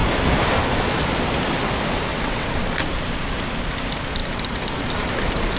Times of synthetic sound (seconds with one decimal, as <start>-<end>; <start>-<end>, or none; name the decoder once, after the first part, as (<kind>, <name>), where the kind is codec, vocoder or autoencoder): 2.1-2.6 (vocoder, WaveNeXt)